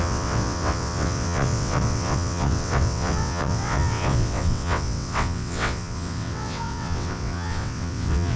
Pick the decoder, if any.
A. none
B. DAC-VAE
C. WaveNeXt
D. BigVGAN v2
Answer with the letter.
C